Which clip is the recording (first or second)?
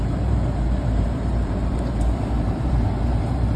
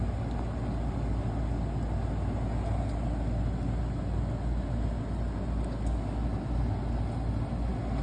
second